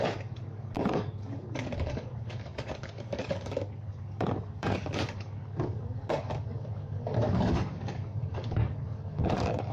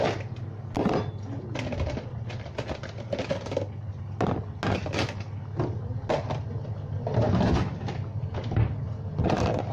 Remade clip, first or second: first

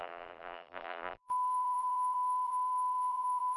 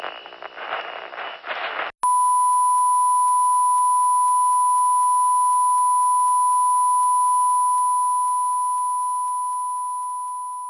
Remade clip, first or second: first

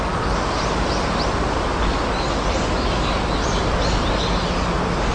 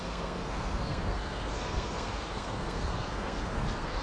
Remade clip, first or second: second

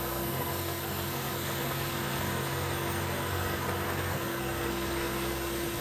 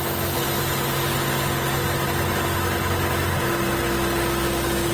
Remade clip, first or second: first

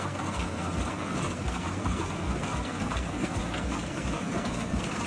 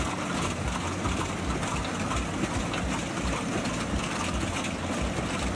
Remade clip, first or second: first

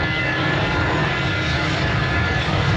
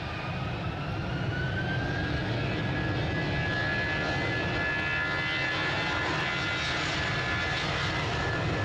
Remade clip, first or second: first